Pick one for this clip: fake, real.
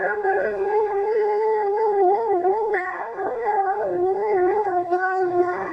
fake